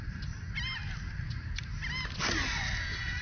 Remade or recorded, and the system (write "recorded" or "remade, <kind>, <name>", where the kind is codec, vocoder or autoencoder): recorded